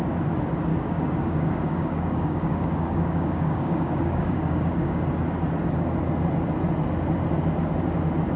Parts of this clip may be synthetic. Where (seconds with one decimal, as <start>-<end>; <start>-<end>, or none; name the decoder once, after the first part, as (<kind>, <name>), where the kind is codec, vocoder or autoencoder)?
0.7-5.0 (codec, DAC)